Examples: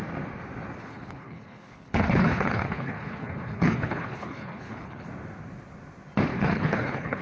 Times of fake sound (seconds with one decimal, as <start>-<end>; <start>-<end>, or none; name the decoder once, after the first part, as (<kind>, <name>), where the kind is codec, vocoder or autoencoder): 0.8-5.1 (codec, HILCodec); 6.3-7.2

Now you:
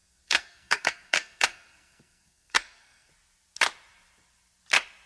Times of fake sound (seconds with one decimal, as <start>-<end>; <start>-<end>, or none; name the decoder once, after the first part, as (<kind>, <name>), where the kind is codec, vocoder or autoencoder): 0.0-3.1 (codec, SNAC)

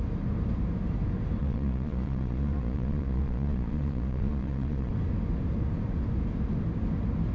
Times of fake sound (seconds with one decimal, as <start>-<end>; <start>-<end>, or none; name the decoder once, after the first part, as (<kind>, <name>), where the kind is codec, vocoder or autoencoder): 1.4-4.9 (vocoder, Vocos)